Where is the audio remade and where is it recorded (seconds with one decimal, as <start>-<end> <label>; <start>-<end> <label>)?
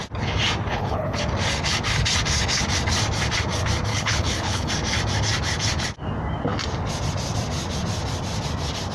0.0-0.7 recorded; 0.7-1.2 remade; 1.2-3.9 recorded; 3.9-4.7 remade; 4.7-8.9 recorded